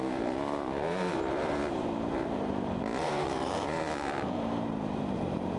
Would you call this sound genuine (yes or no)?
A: no